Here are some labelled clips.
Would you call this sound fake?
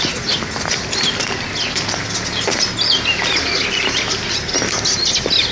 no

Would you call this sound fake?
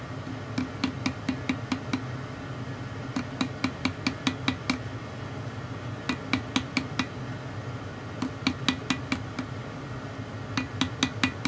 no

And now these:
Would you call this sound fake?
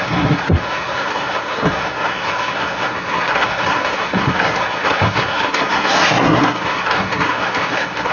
yes